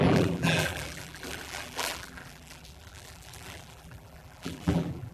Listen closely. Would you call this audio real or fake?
fake